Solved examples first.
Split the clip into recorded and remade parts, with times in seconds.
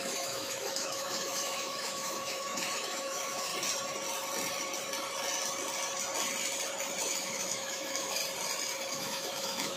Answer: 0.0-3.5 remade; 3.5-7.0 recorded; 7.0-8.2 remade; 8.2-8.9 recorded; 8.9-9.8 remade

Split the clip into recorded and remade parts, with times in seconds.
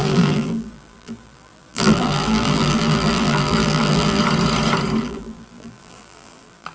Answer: 0.0-4.2 remade; 4.2-5.0 recorded; 5.0-6.7 remade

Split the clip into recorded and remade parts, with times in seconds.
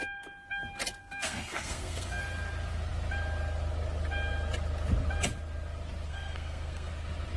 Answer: 0.0-1.0 recorded; 1.0-2.2 remade; 2.2-6.1 recorded; 6.1-6.9 remade; 6.9-7.4 recorded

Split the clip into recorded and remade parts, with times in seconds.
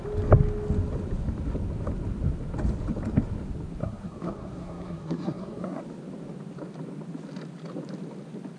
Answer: 0.0-3.8 recorded; 3.8-5.8 remade; 5.8-8.6 recorded